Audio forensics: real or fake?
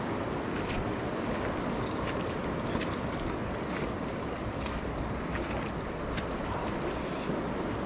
real